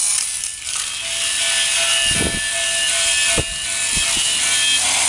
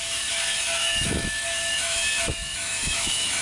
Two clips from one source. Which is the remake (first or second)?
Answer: second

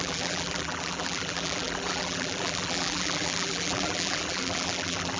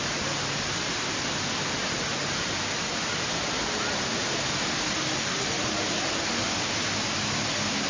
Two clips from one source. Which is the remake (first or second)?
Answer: first